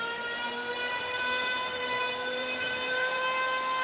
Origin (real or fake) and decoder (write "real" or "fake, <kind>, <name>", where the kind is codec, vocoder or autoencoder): fake, vocoder, BigVGAN v2